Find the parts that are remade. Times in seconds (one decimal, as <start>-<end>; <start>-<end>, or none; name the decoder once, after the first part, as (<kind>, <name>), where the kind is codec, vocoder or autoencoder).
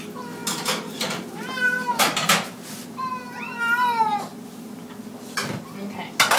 0.4-3.4 (vocoder, BigVGAN v2); 4.3-4.9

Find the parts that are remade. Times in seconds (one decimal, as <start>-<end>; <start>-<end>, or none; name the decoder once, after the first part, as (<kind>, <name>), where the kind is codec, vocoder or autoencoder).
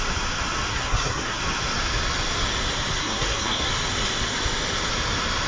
0.7-1.4 (codec, SNAC); 3.0-3.7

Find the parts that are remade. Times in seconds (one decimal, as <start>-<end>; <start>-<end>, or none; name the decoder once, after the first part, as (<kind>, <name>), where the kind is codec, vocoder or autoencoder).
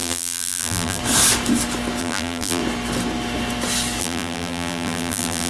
0.0-1.0 (vocoder, BigVGAN v2); 2.0-2.6; 4.0-5.5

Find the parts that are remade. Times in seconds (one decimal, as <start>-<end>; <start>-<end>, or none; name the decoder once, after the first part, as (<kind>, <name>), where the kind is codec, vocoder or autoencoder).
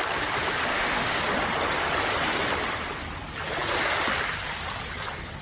0.7-1.2 (autoencoder, DAC-VAE)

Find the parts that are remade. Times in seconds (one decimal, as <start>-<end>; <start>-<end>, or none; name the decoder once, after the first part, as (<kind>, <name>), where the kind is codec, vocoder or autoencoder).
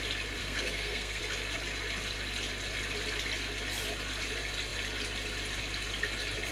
0.4-1.2 (codec, SNAC)